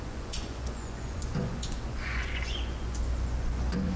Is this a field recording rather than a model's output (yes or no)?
no